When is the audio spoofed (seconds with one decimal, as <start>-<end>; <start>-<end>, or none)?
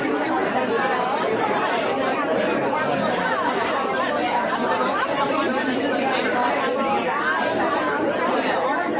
0.0-6.4; 7.4-9.0